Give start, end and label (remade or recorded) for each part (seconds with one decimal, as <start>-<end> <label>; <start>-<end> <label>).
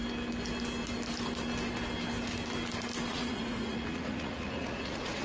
0.0-3.1 recorded; 3.1-5.2 remade